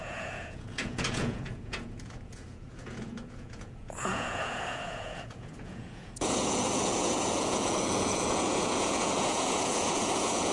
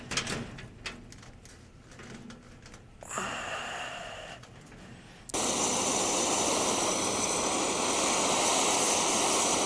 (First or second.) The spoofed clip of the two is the first